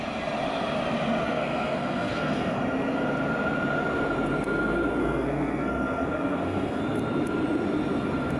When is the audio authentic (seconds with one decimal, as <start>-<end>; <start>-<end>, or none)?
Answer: 0.0-1.2; 2.6-5.0; 6.8-8.4